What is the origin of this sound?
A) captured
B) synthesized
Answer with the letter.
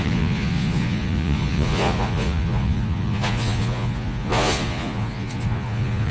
B